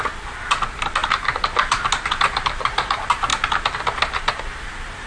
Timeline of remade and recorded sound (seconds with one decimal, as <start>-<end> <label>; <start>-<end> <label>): 0.0-5.1 recorded